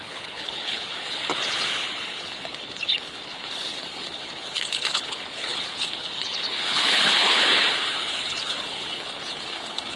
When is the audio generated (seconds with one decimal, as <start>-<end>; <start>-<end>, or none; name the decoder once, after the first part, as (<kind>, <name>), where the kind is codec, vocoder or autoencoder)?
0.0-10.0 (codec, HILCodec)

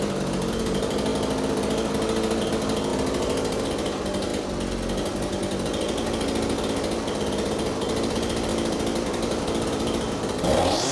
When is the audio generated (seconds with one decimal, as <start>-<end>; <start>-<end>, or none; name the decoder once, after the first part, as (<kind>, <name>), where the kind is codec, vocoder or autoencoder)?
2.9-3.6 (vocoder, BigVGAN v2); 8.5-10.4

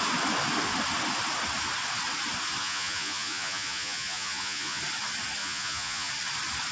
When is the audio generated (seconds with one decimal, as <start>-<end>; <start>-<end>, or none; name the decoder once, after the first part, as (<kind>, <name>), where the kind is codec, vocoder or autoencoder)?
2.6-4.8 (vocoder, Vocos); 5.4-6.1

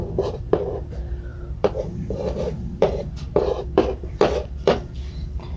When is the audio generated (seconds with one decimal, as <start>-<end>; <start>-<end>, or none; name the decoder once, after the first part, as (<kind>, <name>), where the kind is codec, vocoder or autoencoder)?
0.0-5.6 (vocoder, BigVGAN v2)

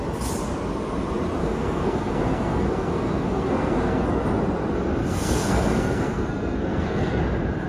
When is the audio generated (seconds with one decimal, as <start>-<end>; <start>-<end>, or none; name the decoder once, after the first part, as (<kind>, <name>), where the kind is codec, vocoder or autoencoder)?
1.4-4.2 (codec, SNAC); 5.0-7.2